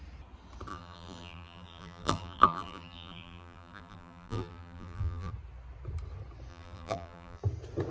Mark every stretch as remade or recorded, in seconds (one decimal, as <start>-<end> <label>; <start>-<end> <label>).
0.0-0.7 recorded; 0.7-5.3 remade; 5.3-6.5 recorded; 6.5-7.4 remade; 7.4-7.9 recorded